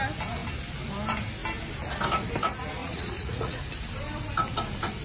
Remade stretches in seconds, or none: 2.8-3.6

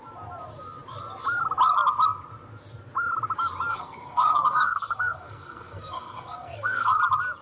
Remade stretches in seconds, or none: 3.7-7.0

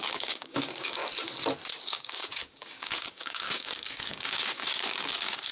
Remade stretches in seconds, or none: 0.0-1.0; 1.7-5.5